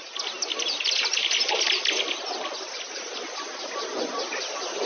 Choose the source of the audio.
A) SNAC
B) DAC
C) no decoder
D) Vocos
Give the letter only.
C